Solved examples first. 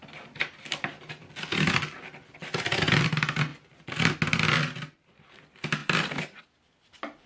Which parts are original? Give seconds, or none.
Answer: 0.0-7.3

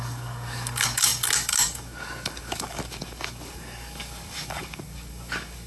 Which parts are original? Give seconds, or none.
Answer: none

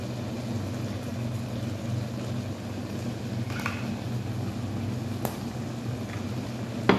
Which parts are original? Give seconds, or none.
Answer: 0.0-7.0